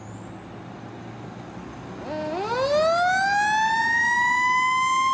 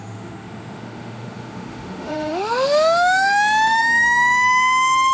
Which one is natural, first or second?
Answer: first